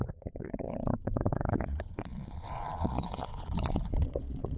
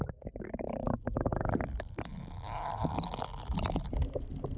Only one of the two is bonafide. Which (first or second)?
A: second